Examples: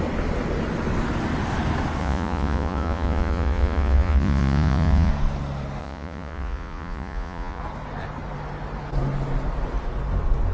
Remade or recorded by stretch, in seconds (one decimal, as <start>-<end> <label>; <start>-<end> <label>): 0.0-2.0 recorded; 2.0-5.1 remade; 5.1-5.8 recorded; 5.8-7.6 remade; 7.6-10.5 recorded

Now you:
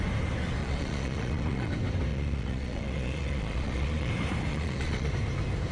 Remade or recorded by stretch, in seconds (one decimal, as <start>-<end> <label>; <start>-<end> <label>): 0.0-0.6 recorded; 0.6-1.7 remade; 1.7-2.1 recorded; 2.1-4.1 remade; 4.1-4.5 recorded; 4.5-5.1 remade; 5.1-5.7 recorded

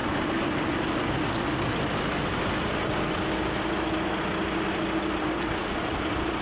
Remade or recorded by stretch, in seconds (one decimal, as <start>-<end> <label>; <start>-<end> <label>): 0.0-6.4 recorded